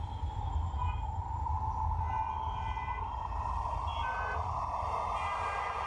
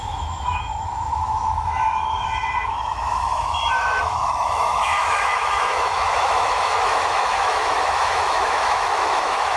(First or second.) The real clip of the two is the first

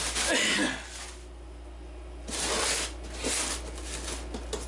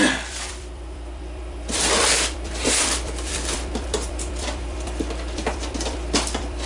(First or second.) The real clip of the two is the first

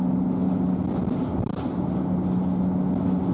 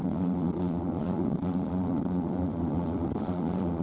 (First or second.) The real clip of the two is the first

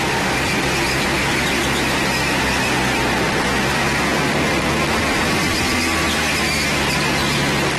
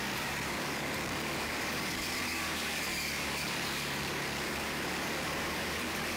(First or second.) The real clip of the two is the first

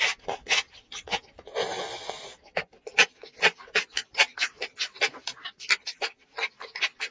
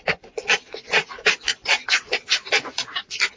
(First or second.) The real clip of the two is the first